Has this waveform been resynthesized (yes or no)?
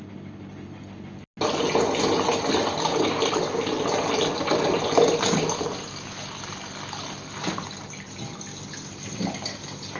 no